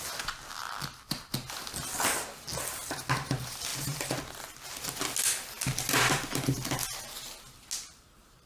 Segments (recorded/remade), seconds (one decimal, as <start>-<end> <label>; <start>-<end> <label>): 0.0-8.5 recorded